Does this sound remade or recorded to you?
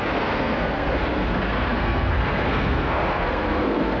remade